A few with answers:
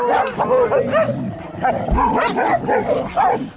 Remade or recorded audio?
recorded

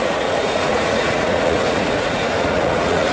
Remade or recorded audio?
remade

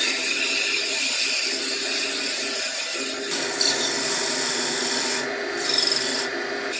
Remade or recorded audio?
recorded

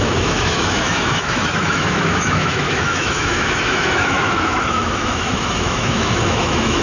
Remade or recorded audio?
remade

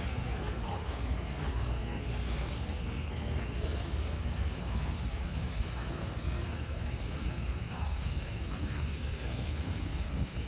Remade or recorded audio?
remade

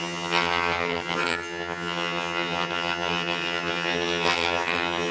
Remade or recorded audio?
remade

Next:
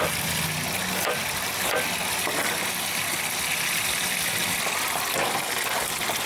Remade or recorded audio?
recorded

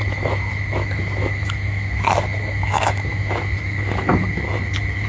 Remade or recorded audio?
remade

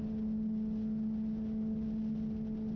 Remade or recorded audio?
recorded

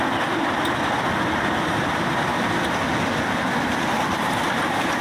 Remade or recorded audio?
recorded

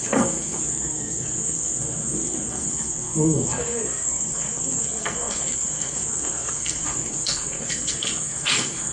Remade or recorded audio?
remade